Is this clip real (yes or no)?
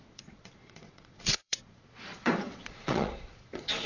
no